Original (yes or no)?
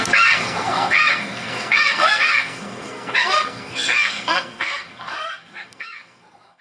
no